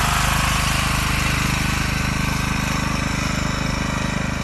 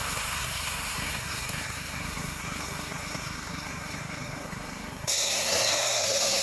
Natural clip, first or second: first